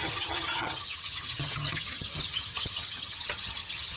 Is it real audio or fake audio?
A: fake